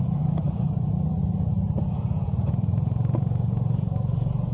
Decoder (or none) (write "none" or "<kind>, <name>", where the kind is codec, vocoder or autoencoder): vocoder, Vocos